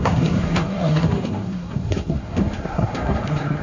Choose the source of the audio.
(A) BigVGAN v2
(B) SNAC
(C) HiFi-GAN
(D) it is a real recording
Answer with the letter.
B